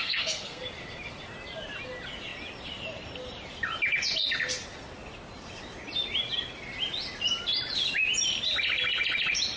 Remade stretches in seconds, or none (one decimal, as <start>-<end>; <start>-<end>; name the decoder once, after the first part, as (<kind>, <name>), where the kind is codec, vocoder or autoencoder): 0.0-0.6 (codec, SNAC)